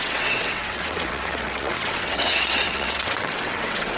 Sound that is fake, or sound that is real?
fake